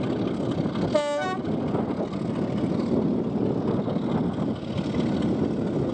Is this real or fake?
real